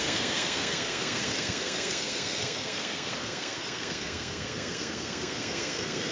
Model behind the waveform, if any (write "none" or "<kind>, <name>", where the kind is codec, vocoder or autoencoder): codec, SNAC